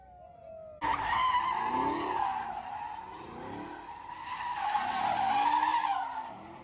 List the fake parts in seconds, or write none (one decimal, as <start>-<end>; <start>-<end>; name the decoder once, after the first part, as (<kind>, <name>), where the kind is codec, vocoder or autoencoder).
none